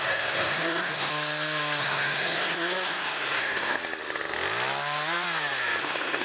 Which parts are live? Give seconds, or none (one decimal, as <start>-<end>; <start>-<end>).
1.1-1.8; 3.8-5.8